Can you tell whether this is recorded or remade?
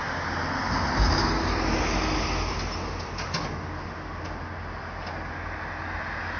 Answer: recorded